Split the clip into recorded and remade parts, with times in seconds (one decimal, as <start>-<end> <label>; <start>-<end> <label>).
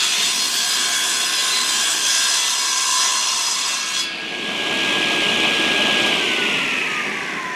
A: 0.0-1.4 recorded; 1.4-2.1 remade; 2.1-7.6 recorded